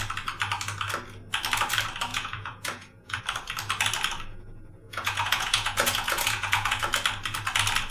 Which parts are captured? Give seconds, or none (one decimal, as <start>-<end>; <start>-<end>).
0.0-2.1; 3.2-4.3; 6.8-7.9

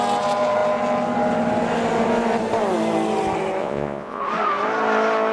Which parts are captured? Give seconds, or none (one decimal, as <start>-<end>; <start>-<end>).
0.0-3.6; 4.2-5.3

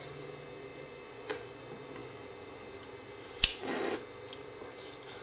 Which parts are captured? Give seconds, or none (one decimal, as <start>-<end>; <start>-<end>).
0.0-0.7; 1.6-5.2

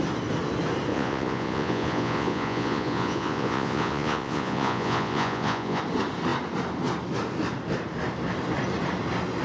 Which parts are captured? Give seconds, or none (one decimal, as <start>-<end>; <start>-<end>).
0.0-0.9; 5.8-9.4

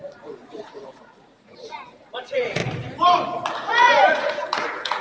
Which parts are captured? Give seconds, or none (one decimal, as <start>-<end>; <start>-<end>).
2.6-3.7

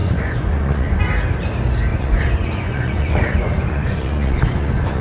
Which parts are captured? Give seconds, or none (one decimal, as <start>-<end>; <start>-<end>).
1.0-1.9

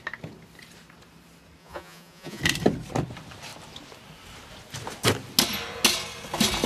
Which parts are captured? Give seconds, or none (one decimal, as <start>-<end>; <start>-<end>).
0.0-1.6; 2.4-6.7